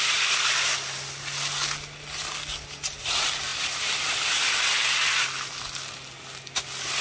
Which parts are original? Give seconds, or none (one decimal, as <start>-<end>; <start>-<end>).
0.0-7.0